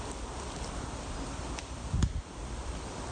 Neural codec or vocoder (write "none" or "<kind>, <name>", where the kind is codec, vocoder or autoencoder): none